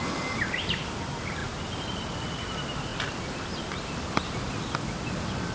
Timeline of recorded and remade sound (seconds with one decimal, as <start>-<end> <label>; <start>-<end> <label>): 0.0-1.4 recorded; 1.4-2.0 remade; 2.0-2.9 recorded; 2.9-4.8 remade; 4.8-5.5 recorded